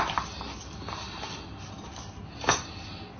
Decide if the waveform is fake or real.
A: real